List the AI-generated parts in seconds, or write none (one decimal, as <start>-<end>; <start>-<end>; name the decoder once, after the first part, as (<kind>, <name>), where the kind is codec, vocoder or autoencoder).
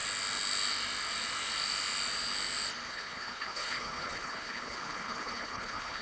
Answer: 2.9-6.0 (codec, HILCodec)